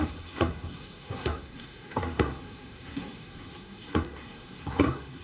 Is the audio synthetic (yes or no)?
yes